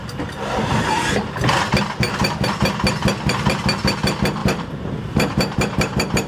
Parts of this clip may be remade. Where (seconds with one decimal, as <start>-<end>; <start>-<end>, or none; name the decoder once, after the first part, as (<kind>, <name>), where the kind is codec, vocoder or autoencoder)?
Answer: 4.4-6.3 (vocoder, BigVGAN v2)